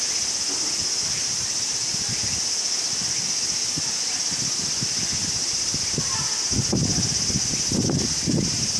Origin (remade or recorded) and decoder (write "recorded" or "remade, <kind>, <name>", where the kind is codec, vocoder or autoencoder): recorded